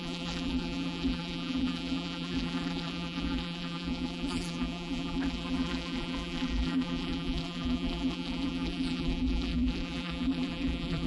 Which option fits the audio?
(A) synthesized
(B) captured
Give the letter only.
A